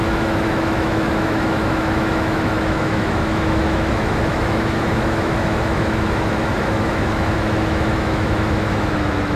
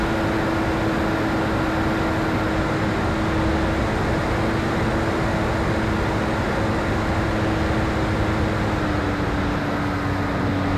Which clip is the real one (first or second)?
second